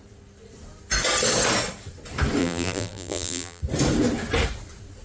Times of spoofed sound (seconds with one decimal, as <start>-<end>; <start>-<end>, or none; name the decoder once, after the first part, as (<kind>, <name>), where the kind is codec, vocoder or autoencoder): 2.4-3.6 (vocoder, BigVGAN v2)